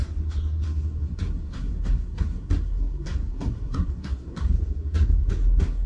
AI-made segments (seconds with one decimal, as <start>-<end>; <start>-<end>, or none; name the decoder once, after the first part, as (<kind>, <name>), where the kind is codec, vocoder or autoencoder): 0.0-5.9 (codec, SNAC)